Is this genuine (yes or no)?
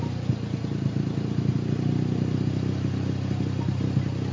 yes